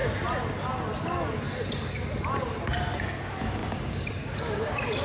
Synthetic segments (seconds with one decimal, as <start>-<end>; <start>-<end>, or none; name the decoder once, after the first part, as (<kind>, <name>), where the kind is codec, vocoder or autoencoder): 3.0-5.0 (codec, DAC)